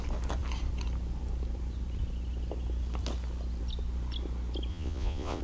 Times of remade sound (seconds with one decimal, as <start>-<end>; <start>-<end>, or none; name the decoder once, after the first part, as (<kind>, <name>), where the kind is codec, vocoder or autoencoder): 4.7-5.4 (vocoder, Vocos)